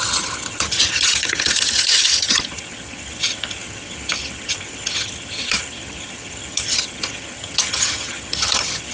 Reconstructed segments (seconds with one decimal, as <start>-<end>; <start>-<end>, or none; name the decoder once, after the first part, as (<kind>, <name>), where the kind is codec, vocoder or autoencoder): 0.0-8.9 (vocoder, HiFi-GAN)